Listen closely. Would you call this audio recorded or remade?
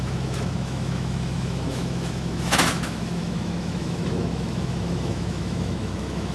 remade